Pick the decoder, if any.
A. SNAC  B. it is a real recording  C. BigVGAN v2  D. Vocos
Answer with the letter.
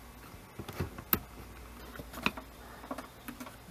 B